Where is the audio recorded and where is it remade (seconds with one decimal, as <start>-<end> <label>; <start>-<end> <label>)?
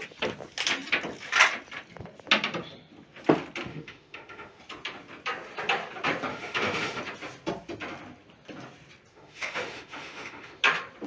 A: 0.0-3.7 recorded; 3.7-4.6 remade; 4.6-6.3 recorded; 6.3-7.0 remade; 7.0-9.1 recorded; 9.1-10.6 remade; 10.6-11.1 recorded